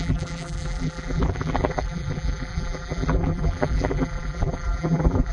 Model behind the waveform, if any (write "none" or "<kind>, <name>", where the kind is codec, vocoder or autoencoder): vocoder, BigVGAN v2